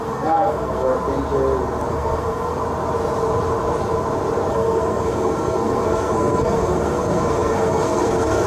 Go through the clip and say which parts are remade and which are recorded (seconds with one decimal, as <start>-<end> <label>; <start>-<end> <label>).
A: 0.0-0.9 remade; 0.9-1.9 recorded; 1.9-2.6 remade; 2.6-4.5 recorded; 4.5-8.5 remade